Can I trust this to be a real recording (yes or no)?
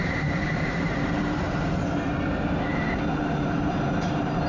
no